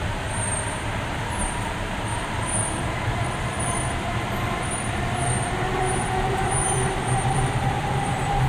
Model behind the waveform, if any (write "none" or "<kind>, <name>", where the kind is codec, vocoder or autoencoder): vocoder, BigVGAN v2